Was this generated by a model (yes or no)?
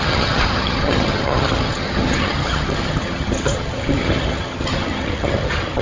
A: yes